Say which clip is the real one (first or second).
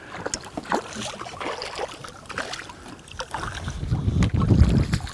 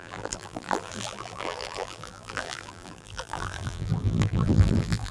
first